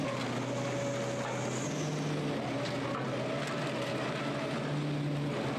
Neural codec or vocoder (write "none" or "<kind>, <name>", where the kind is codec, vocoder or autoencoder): none